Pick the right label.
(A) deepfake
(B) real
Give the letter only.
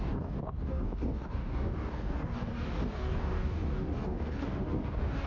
A